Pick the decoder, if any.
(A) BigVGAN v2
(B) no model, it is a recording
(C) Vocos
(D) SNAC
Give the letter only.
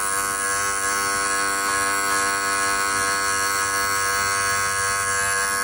B